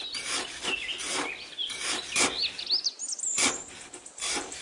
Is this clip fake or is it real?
real